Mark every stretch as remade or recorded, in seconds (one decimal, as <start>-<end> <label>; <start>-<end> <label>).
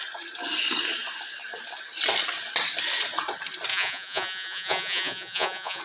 0.0-3.7 recorded; 3.7-5.8 remade